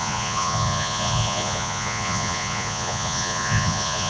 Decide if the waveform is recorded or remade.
remade